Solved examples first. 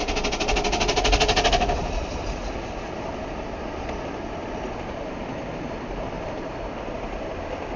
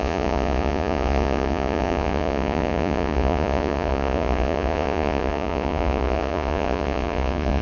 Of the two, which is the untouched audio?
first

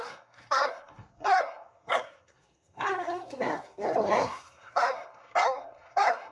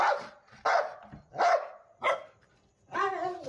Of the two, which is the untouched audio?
second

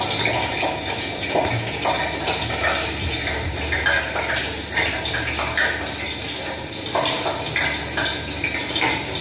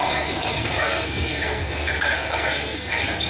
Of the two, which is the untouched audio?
first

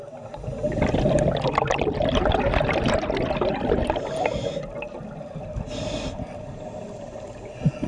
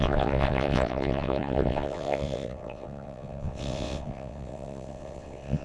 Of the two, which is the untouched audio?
first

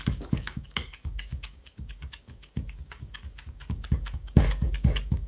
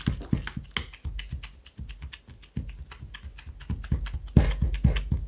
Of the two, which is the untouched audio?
second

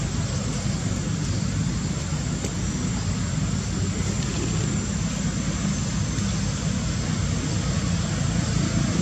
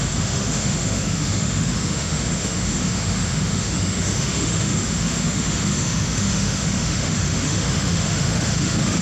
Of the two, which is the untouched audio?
first